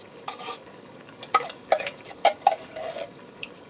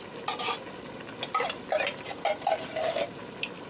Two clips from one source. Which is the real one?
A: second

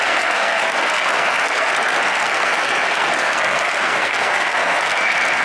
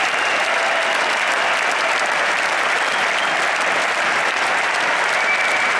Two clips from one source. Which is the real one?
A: second